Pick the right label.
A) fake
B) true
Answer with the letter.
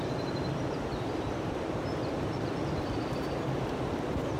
A